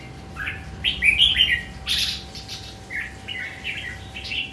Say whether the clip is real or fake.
real